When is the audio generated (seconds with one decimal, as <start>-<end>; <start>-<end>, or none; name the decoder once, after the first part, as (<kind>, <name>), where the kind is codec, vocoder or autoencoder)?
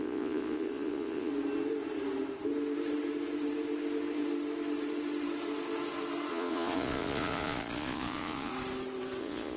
0.0-1.3 (vocoder, Vocos); 6.3-8.5; 9.2-9.6